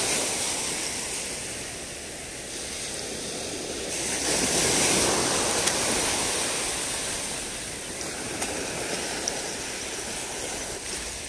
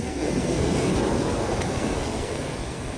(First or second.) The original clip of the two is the first